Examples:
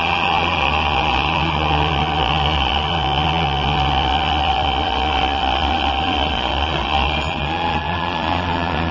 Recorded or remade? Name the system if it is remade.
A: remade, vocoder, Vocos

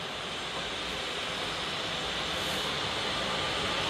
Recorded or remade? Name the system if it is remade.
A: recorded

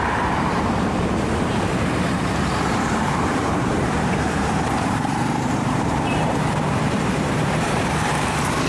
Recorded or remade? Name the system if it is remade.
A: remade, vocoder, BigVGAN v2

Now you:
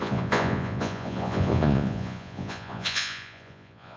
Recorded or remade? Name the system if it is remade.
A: remade, vocoder, Vocos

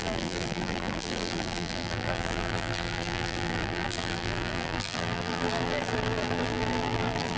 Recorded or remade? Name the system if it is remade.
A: remade, vocoder, BigVGAN v2